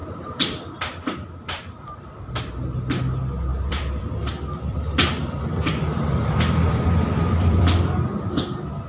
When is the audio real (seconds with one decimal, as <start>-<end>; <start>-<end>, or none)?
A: 0.0-3.5; 7.6-8.9